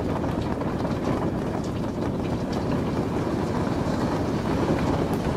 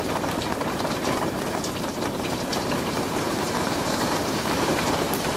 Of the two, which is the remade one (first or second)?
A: second